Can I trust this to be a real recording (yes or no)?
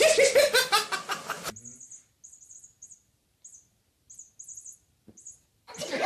yes